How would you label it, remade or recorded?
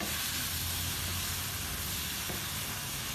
recorded